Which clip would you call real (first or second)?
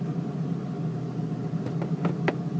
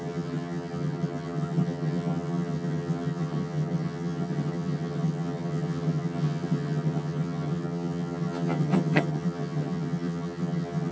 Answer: first